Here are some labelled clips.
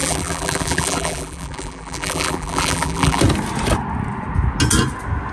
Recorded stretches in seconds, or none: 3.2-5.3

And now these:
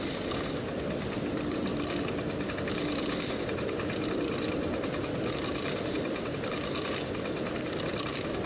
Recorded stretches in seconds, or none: none

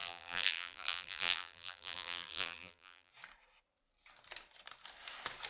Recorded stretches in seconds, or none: 3.1-5.5

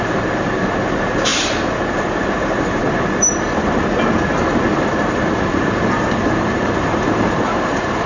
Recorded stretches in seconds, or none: 2.8-5.1

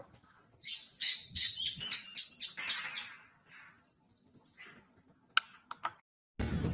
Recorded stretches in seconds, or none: 0.0-6.7

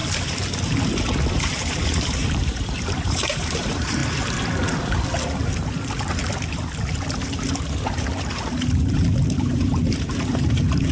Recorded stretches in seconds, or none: 0.0-1.3; 4.0-8.9

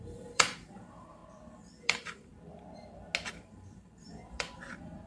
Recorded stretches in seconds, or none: 1.2-1.8; 2.3-3.3

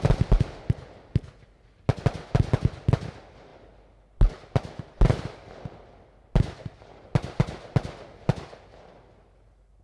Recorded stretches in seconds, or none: 0.0-9.8